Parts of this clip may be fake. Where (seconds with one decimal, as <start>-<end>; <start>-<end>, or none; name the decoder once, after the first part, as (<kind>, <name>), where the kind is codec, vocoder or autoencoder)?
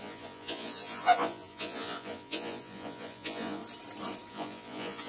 0.0-3.6 (vocoder, Vocos); 4.3-5.1